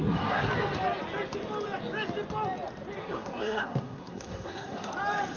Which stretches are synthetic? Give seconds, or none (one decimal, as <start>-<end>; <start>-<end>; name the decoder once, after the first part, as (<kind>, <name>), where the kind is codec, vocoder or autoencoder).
0.0-0.5 (codec, SNAC); 3.0-4.9